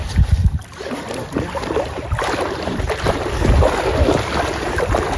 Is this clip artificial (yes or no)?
yes